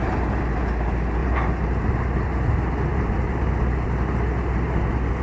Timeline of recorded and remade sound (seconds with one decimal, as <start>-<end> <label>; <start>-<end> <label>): 0.0-0.6 remade; 0.6-1.2 recorded; 1.2-1.9 remade; 1.9-2.9 recorded; 2.9-3.5 remade; 3.5-5.2 recorded